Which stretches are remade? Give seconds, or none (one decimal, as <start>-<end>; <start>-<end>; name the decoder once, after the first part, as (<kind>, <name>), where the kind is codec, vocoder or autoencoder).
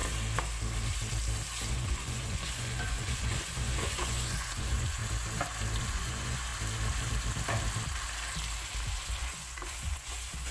1.7-5.0 (vocoder, Vocos); 5.8-6.5; 8.9-10.5